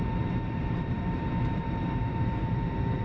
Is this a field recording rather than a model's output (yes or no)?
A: no